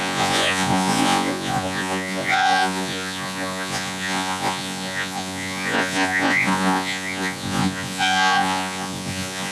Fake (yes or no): yes